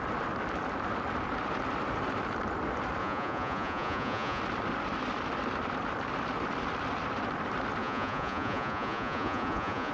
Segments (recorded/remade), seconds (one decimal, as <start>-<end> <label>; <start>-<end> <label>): 0.0-3.0 recorded; 3.0-4.4 remade; 4.4-7.8 recorded; 7.8-9.9 remade